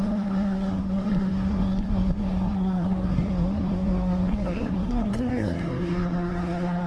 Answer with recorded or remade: remade